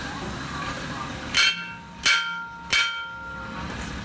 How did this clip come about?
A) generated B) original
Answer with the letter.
B